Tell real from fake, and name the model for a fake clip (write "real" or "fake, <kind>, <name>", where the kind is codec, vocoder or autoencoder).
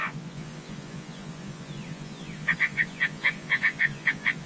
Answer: fake, vocoder, Vocos